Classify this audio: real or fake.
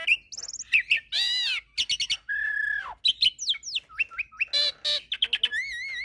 real